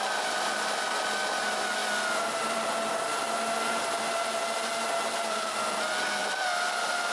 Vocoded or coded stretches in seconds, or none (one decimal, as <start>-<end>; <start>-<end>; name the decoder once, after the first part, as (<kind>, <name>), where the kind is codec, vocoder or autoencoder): none